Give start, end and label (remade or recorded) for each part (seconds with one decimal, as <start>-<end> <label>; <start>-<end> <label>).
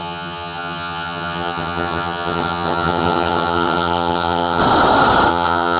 0.0-4.6 remade; 4.6-5.3 recorded; 5.3-5.8 remade